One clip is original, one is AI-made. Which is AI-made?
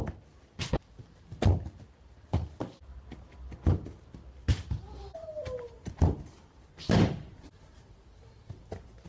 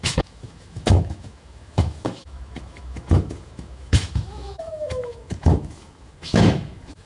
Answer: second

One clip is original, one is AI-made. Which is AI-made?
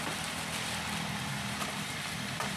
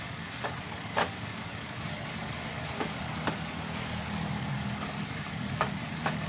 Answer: second